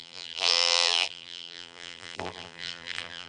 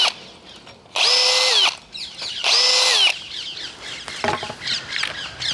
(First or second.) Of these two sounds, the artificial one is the first